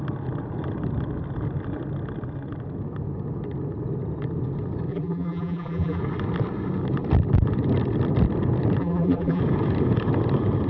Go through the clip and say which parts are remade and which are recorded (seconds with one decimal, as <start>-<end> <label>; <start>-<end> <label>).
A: 0.0-4.9 recorded; 4.9-6.0 remade; 6.0-8.8 recorded; 8.8-9.4 remade; 9.4-10.7 recorded